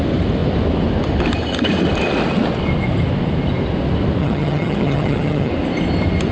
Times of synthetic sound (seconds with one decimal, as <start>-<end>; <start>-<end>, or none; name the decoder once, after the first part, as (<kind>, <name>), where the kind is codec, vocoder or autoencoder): 4.2-5.5 (vocoder, HiFi-GAN)